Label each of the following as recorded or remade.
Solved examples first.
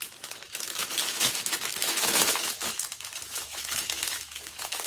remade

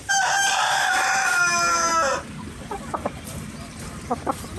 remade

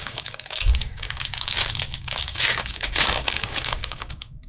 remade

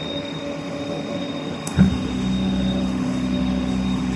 remade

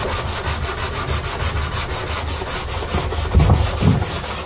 recorded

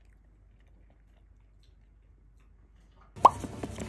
recorded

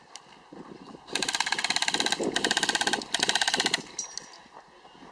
recorded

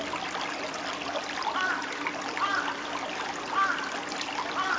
recorded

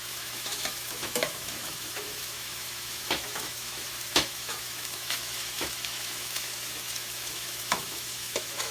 remade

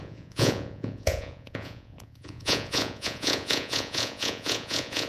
remade